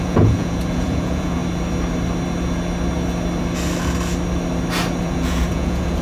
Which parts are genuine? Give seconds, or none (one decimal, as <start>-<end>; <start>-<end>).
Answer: 1.4-5.0